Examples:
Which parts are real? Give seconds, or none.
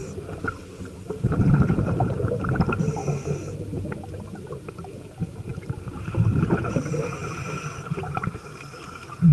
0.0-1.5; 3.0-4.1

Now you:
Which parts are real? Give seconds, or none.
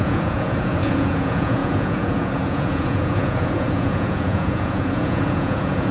none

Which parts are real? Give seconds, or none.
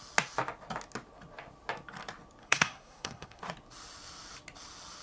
0.0-2.4; 3.4-5.0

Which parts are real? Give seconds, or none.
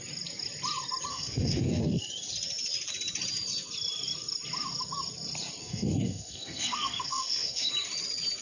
0.0-1.1; 2.0-5.6; 7.7-8.4